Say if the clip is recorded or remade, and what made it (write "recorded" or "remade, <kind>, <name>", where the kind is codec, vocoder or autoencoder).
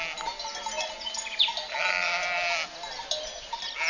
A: recorded